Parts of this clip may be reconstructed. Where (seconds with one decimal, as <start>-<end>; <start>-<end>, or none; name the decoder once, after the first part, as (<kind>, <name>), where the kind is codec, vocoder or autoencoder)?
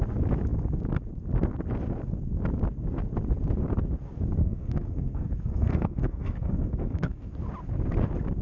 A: 4.4-7.3 (codec, SNAC)